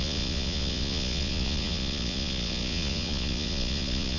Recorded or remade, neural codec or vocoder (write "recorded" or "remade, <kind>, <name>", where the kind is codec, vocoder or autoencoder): remade, vocoder, Vocos